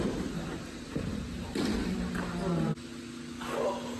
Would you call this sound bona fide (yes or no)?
yes